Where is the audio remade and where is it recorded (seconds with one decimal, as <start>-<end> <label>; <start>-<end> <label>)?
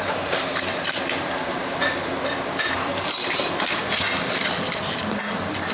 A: 0.0-5.7 remade